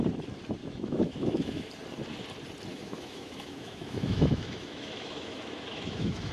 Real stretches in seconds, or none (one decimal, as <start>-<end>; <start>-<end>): 0.0-0.6; 1.7-2.7